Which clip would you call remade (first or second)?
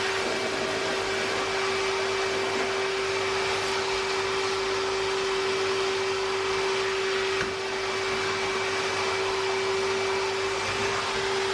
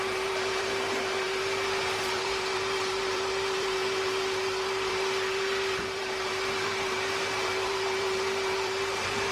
second